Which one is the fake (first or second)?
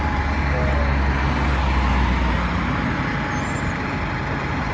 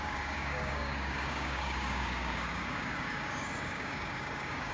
second